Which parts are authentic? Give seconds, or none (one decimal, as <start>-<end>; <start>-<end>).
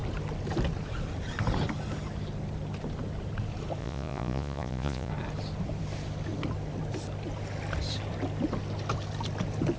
0.0-3.8; 5.1-9.8